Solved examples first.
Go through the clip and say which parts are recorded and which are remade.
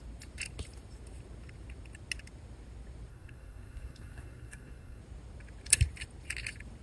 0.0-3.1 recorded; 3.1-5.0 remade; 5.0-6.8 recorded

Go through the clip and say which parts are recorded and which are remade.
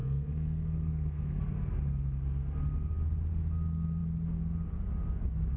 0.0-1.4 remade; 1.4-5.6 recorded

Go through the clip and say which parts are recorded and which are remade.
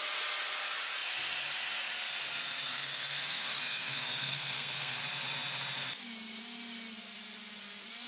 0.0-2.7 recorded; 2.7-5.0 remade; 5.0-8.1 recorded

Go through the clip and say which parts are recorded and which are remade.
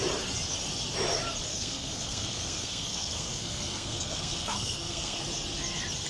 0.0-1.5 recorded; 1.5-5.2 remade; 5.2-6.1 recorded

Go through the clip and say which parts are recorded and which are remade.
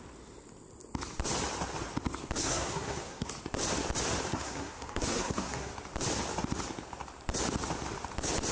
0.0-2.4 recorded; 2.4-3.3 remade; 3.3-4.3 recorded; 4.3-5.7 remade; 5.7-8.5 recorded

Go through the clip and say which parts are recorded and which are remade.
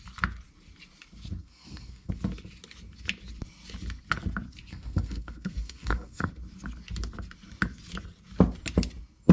0.0-1.4 recorded; 1.4-2.1 remade; 2.1-4.7 recorded; 4.7-6.3 remade; 6.3-9.3 recorded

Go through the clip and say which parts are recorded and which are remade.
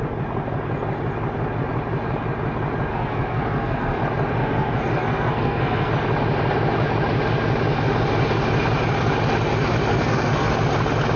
0.0-2.9 recorded; 2.9-4.0 remade; 4.0-4.4 recorded; 4.4-5.9 remade; 5.9-9.9 recorded; 9.9-10.5 remade; 10.5-11.2 recorded